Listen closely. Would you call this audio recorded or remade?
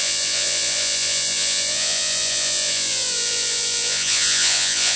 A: remade